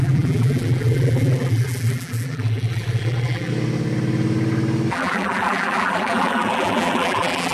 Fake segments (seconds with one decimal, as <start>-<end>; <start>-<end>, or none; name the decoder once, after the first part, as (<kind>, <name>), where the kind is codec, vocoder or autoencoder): 0.0-3.5 (vocoder, BigVGAN v2); 4.9-7.5

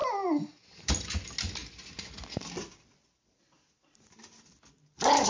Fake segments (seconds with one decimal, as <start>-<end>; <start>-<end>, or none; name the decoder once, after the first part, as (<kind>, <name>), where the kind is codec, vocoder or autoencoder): 0.0-0.9 (vocoder, BigVGAN v2)